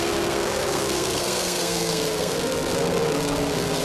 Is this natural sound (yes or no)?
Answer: no